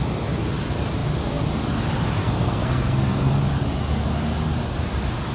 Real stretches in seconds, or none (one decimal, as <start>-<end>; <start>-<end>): 0.0-2.2; 3.3-5.3